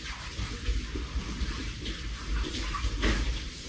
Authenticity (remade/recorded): remade